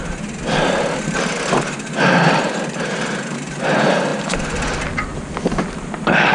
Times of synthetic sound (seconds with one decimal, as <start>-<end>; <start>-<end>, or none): none